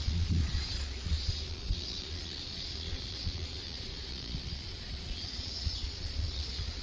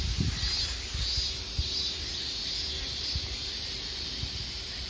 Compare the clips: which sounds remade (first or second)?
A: first